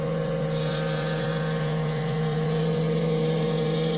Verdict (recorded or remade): remade